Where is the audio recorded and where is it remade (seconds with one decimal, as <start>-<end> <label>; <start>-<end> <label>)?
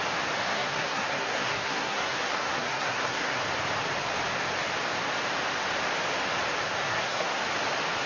0.0-0.5 recorded; 0.5-3.4 remade; 3.4-6.8 recorded; 6.8-7.4 remade; 7.4-8.1 recorded